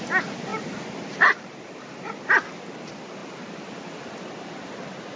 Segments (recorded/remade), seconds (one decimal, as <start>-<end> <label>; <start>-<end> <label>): 0.0-0.5 recorded; 0.5-2.1 remade; 2.1-3.2 recorded; 3.2-3.9 remade; 3.9-5.2 recorded

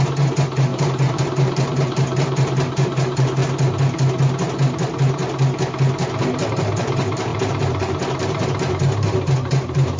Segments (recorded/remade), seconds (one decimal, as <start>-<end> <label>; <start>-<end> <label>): 0.0-3.4 remade; 3.4-6.5 recorded; 6.5-10.0 remade

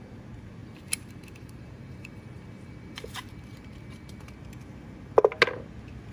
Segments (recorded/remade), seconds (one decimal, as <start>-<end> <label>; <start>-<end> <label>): 0.0-0.6 recorded; 0.6-4.3 remade; 4.3-6.1 recorded

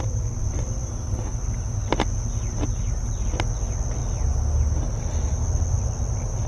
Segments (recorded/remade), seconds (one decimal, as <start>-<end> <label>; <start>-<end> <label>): 0.0-6.5 recorded